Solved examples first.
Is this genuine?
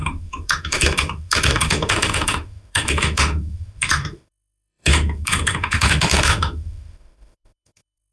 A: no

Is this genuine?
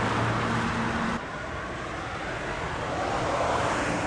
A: yes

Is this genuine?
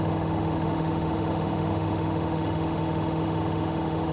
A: no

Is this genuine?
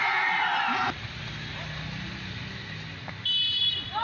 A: yes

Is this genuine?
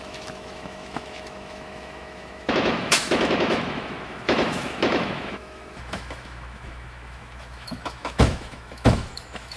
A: no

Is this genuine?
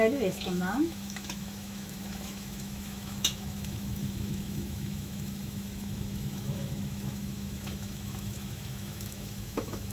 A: no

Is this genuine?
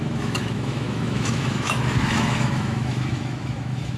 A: no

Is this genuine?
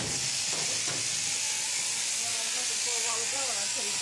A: yes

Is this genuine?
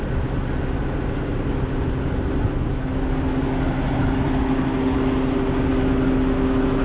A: yes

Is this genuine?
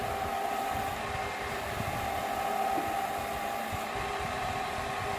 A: yes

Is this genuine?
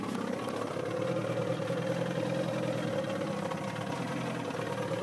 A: yes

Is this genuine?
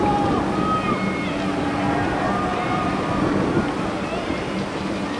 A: yes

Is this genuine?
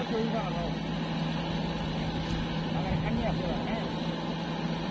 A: yes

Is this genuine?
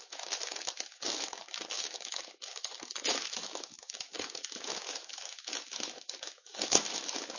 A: no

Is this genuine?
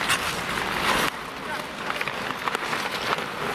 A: yes